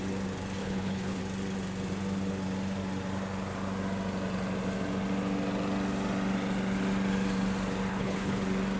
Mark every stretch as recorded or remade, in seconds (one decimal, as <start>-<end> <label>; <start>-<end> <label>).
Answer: 0.0-0.6 recorded; 0.6-1.2 remade; 1.2-7.9 recorded; 7.9-8.4 remade; 8.4-8.8 recorded